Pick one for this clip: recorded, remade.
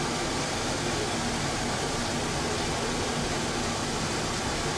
recorded